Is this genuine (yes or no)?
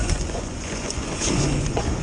no